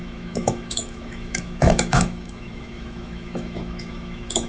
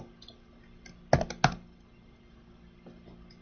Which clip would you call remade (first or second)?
first